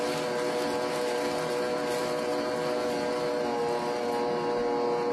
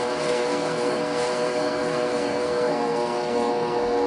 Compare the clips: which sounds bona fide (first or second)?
first